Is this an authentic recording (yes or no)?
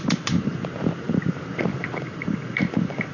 no